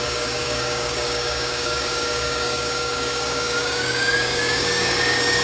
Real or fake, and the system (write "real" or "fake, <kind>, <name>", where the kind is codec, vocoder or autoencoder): fake, codec, DAC